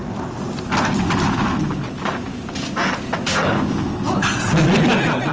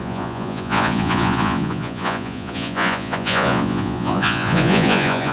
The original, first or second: first